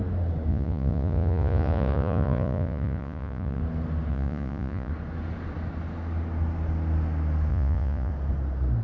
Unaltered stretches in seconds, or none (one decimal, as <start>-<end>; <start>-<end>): 0.0-0.5; 3.6-4.1; 4.9-7.5; 8.1-8.8

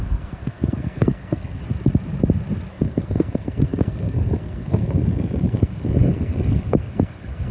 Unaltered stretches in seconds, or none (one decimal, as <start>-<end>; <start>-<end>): 1.6-2.7

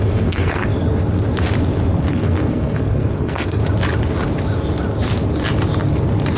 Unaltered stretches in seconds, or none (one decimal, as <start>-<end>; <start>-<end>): 0.7-2.1; 3.6-6.4

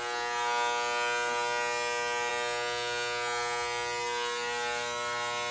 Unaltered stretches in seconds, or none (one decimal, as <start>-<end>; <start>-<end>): 0.0-5.5

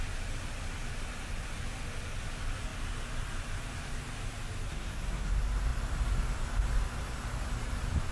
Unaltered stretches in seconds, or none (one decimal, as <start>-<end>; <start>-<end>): 0.0-4.7; 5.3-8.1

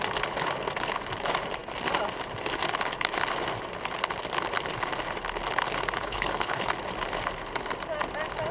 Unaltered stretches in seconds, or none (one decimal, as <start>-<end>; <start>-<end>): 0.0-6.0; 6.7-8.5